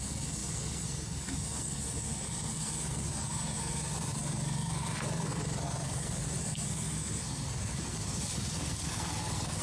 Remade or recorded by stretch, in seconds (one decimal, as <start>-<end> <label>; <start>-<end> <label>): 0.0-9.6 remade